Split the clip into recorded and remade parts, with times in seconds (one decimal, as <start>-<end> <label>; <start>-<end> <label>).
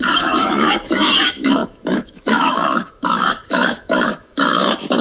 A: 0.0-5.0 remade